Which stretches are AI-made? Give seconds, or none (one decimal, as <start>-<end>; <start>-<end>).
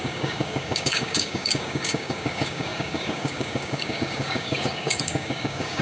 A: 0.0-5.8